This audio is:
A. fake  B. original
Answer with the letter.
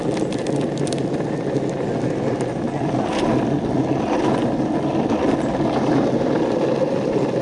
B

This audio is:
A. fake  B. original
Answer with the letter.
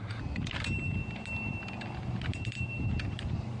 B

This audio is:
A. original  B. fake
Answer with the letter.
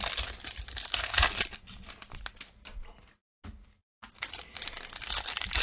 A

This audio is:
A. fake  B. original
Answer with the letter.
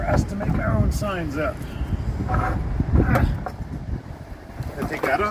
B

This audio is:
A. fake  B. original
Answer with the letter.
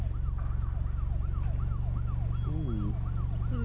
B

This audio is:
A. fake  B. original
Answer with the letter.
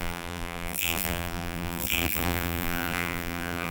A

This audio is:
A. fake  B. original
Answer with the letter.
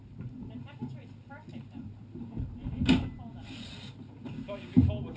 B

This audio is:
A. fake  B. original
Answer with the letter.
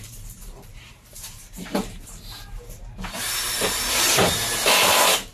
A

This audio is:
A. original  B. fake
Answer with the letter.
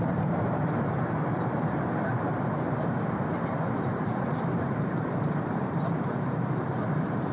B